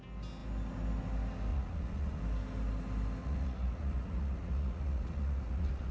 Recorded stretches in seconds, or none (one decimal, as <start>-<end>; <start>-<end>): 0.0-1.5; 2.2-3.2